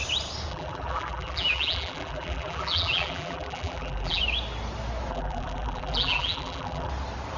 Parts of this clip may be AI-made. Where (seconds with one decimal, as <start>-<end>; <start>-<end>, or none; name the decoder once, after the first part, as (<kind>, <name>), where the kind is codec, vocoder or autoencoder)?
0.5-4.2 (vocoder, BigVGAN v2); 5.1-6.9